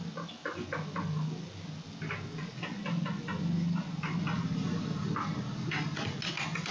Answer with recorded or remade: recorded